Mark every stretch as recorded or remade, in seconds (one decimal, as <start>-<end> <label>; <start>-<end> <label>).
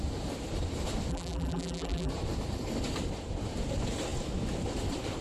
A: 0.0-1.1 recorded; 1.1-2.1 remade; 2.1-5.2 recorded